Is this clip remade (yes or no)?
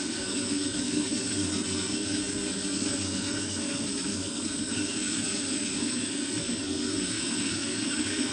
yes